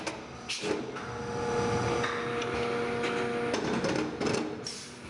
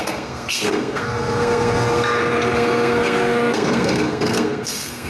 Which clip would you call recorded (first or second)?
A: first